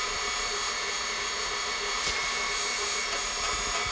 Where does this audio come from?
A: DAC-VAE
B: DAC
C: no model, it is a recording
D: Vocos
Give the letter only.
C